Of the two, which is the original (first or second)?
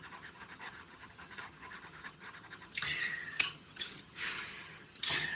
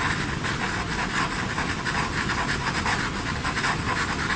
second